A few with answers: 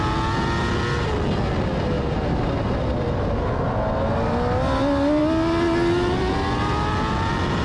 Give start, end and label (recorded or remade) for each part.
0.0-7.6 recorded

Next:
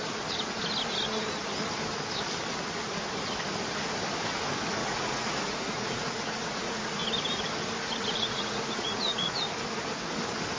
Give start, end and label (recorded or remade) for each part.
0.0-4.8 recorded; 4.8-7.0 remade; 7.0-8.0 recorded; 8.0-9.4 remade; 9.4-10.6 recorded

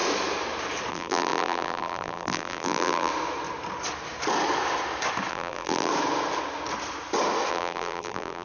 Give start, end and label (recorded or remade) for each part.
0.0-0.9 recorded; 0.9-3.1 remade; 3.1-5.3 recorded; 5.3-5.9 remade; 5.9-7.5 recorded; 7.5-8.4 remade

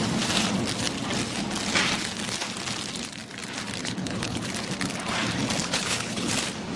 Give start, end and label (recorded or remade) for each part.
0.0-3.8 recorded; 3.8-4.5 remade; 4.5-5.6 recorded; 5.6-6.3 remade; 6.3-6.8 recorded

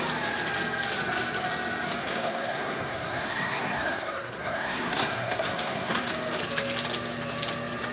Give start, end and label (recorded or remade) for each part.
0.0-2.0 recorded; 2.0-6.1 remade; 6.1-7.9 recorded

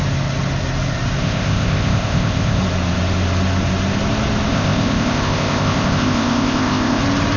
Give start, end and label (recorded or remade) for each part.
0.0-1.2 recorded; 1.2-2.6 remade; 2.6-4.5 recorded; 4.5-7.0 remade; 7.0-7.4 recorded

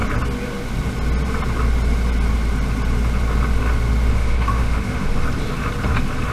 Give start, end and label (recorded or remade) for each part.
0.0-4.1 recorded; 4.1-5.1 remade; 5.1-6.3 recorded

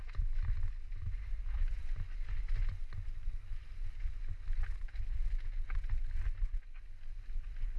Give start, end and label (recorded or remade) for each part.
0.0-7.8 recorded